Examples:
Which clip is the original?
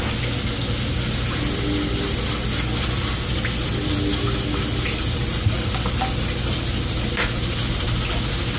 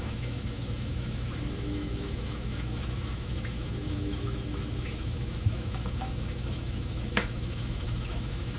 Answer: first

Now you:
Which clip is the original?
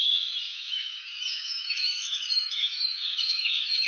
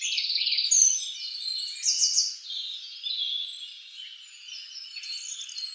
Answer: second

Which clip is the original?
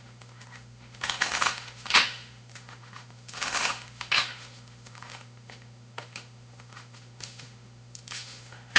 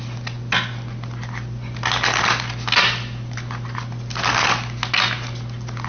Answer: second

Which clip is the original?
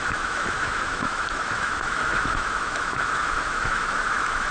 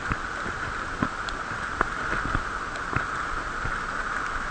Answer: second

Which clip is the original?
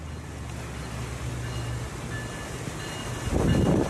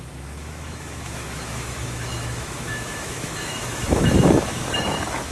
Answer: first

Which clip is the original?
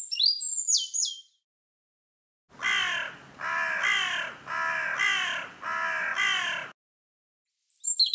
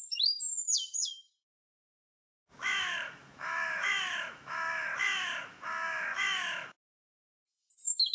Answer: first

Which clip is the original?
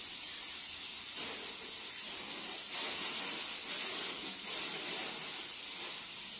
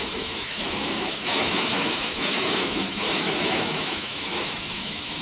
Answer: first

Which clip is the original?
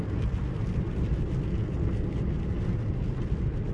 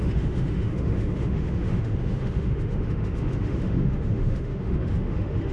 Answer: first